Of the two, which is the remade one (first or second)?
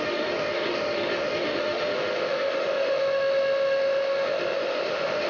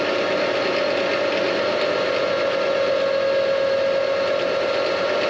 first